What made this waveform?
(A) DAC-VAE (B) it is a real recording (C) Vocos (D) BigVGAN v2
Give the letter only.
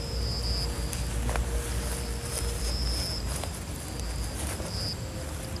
B